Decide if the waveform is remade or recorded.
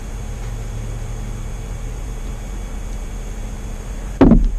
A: recorded